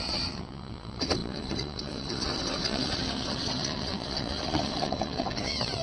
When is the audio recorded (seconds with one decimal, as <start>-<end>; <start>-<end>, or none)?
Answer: none